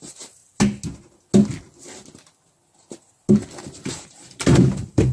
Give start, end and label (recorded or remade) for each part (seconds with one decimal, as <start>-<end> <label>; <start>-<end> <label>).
0.0-0.4 remade; 0.4-3.5 recorded; 3.5-5.1 remade

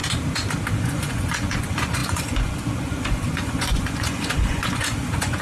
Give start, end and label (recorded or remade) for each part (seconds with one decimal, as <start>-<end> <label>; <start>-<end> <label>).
0.0-0.8 recorded; 0.8-5.4 remade

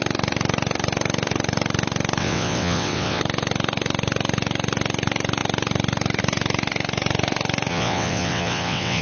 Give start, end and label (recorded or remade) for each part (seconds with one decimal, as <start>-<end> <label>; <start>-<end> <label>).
0.0-2.2 recorded; 2.2-3.2 remade; 3.2-7.7 recorded; 7.7-9.0 remade